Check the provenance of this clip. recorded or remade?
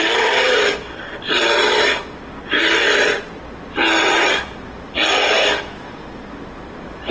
recorded